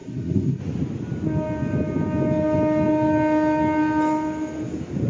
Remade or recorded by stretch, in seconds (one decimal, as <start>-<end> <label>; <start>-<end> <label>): 0.0-0.6 remade; 0.6-5.1 recorded